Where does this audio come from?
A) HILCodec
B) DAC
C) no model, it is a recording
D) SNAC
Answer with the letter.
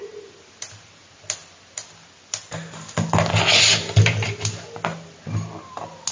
C